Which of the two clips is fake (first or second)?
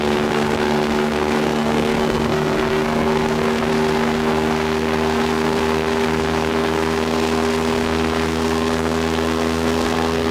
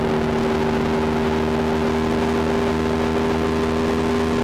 first